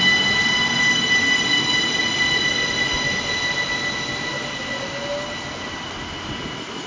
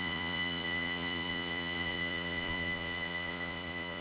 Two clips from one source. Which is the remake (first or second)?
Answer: second